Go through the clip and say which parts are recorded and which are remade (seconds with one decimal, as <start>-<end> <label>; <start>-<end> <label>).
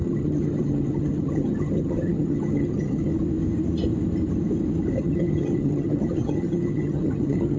0.0-3.1 remade; 3.1-5.0 recorded; 5.0-7.6 remade